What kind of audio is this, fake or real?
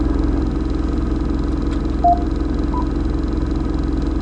real